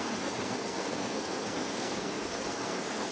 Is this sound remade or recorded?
remade